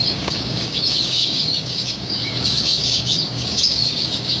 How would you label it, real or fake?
fake